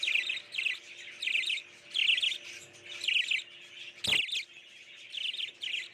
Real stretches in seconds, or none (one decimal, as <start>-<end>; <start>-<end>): 0.0-5.9